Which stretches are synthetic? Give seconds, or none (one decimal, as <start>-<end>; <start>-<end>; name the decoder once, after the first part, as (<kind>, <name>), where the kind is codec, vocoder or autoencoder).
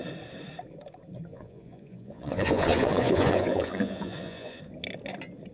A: 1.3-4.6 (vocoder, Vocos)